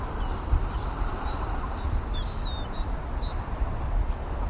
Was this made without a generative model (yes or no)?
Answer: yes